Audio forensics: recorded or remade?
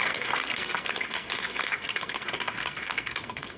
remade